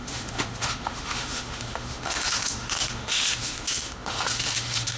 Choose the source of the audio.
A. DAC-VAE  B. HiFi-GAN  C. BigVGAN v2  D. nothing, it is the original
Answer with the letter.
A